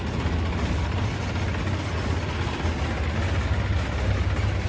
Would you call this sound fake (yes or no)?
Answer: no